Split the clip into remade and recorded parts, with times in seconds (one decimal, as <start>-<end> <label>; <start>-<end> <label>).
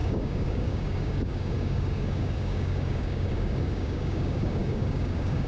0.0-5.5 remade